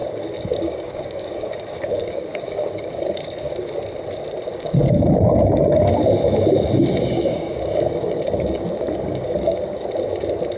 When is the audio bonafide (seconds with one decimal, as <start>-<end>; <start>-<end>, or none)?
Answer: 3.8-4.5; 5.9-7.3; 9.9-10.6

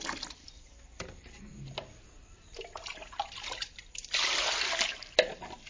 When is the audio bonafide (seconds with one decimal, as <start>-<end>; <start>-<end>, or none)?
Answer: 0.0-5.7

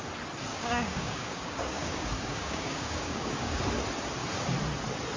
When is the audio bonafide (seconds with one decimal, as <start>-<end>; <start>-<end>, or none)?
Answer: 0.0-0.5; 3.6-5.2

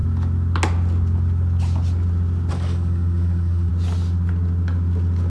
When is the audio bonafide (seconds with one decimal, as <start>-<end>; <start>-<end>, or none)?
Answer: 0.0-2.5; 3.7-5.3

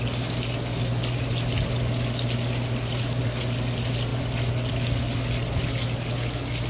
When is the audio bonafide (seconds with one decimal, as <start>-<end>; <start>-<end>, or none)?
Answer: 0.0-6.7

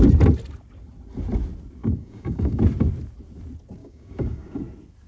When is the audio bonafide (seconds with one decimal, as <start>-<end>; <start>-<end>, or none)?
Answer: 0.0-1.8; 2.6-3.8; 4.6-5.1